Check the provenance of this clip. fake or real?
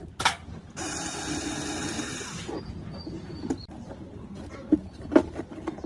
real